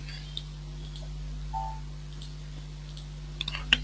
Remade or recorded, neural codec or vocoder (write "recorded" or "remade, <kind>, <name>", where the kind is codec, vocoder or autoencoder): remade, vocoder, BigVGAN v2